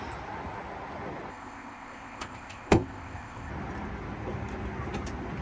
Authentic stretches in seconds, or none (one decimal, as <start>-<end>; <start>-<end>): 0.0-1.3; 3.5-5.4